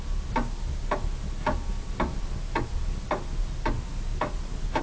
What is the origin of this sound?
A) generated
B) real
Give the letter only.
B